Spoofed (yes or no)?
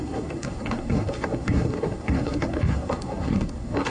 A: yes